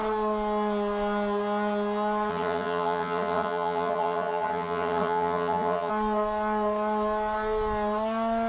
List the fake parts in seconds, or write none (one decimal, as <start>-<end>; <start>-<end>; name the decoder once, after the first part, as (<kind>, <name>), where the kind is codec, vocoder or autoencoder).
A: 2.3-5.9 (vocoder, HiFi-GAN)